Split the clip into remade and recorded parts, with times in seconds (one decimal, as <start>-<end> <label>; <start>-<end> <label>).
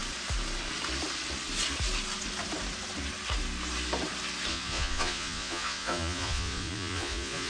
0.0-4.5 recorded; 4.5-7.5 remade